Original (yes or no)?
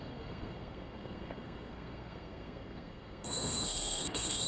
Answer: no